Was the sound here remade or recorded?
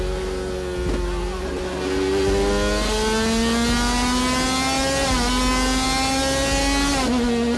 recorded